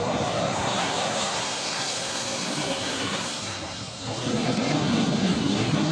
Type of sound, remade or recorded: remade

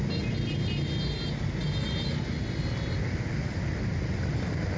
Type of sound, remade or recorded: recorded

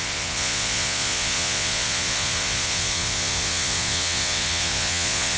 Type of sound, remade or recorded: remade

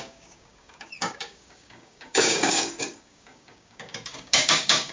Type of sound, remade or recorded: remade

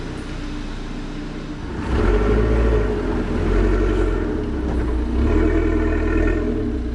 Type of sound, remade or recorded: recorded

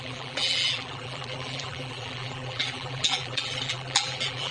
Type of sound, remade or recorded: remade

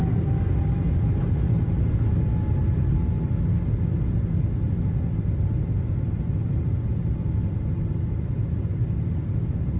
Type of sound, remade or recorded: recorded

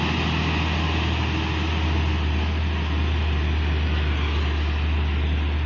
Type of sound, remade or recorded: recorded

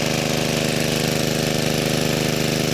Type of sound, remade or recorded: recorded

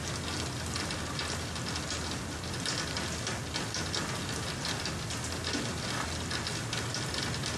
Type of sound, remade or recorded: recorded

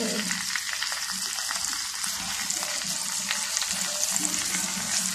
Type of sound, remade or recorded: recorded